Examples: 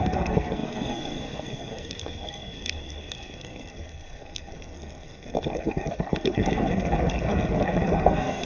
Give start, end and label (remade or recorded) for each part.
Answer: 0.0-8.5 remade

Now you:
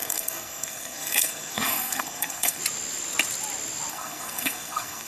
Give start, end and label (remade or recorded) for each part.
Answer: 0.0-2.6 remade; 2.6-3.9 recorded; 3.9-5.1 remade

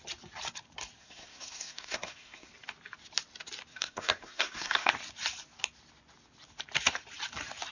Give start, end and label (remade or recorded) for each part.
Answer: 0.0-1.0 recorded; 1.0-2.5 remade; 2.5-3.7 recorded; 3.7-4.9 remade; 4.9-7.7 recorded

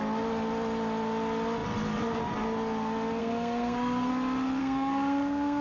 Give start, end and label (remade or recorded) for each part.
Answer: 0.0-3.2 recorded; 3.2-4.1 remade; 4.1-4.6 recorded; 4.6-5.6 remade

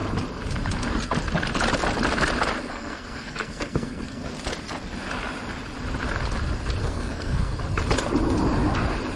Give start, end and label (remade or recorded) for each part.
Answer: 0.0-2.7 recorded; 2.7-4.3 remade; 4.3-6.8 recorded; 6.8-7.5 remade; 7.5-9.2 recorded

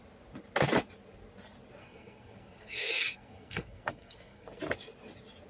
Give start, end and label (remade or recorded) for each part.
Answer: 0.0-1.8 recorded; 1.8-4.6 remade; 4.6-5.5 recorded

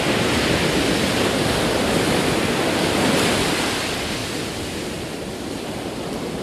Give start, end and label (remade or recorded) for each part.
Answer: 0.0-6.4 recorded

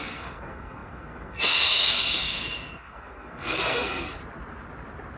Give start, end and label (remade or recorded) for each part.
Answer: 0.0-4.2 remade; 4.2-5.2 recorded